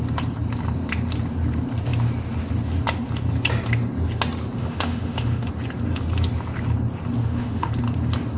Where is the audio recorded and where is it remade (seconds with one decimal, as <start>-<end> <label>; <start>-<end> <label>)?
0.0-4.6 recorded; 4.6-5.5 remade; 5.5-7.2 recorded; 7.2-7.7 remade; 7.7-8.4 recorded